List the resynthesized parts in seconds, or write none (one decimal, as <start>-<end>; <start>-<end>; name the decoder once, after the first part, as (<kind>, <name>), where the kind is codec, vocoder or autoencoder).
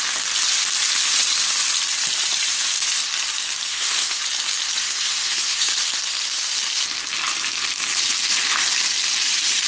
3.7-4.2 (codec, SNAC); 4.8-5.7